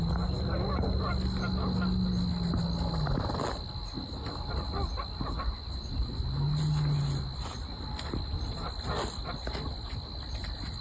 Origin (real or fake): real